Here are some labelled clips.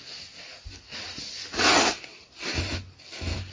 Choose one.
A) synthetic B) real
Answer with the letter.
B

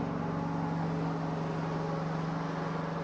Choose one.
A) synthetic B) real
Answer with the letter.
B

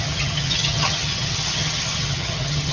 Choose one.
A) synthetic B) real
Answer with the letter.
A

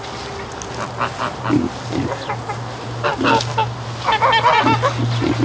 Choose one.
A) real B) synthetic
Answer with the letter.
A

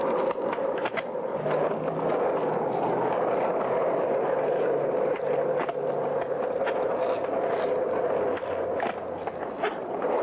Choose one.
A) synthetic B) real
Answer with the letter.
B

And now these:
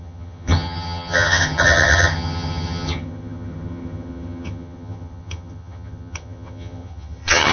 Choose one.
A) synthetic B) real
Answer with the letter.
A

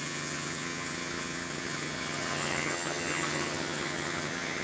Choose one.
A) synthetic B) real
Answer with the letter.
A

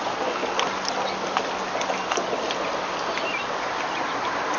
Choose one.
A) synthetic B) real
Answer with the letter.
B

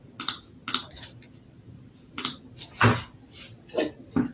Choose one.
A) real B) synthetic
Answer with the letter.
A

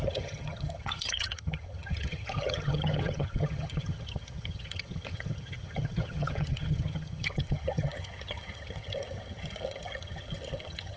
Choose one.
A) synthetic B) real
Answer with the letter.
A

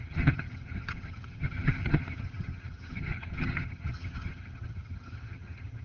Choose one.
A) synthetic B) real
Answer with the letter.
A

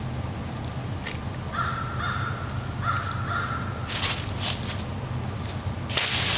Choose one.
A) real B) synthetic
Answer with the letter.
A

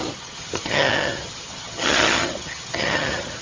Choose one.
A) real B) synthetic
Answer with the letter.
B